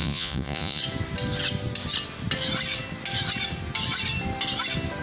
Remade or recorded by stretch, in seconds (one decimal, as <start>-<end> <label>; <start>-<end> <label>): 0.0-0.8 remade; 0.8-5.0 recorded